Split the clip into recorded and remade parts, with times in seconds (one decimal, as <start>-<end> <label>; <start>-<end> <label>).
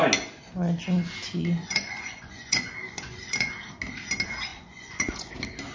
0.0-1.6 recorded; 1.6-3.5 remade; 3.5-4.5 recorded; 4.5-5.3 remade; 5.3-5.7 recorded